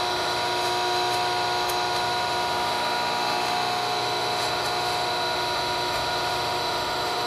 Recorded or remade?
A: remade